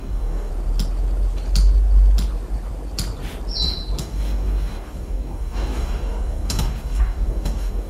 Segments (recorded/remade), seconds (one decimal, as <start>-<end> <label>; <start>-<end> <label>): 0.0-0.5 remade; 0.5-4.0 recorded; 4.0-7.9 remade

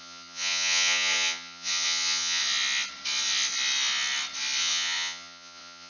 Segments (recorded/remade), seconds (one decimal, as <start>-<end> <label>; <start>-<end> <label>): 0.0-2.4 remade; 2.4-4.6 recorded; 4.6-5.9 remade

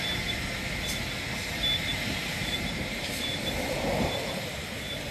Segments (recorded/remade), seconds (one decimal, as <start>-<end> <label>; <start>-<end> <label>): 0.0-1.9 recorded; 1.9-5.1 remade

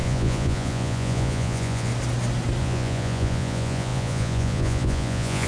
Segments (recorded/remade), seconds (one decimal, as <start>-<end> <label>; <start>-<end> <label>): 0.0-1.9 remade; 1.9-2.6 recorded; 2.6-5.5 remade